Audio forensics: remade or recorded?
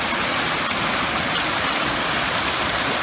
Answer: recorded